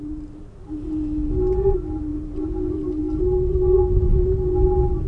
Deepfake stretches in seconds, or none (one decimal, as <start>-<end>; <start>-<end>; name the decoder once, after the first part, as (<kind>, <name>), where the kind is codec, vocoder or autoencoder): none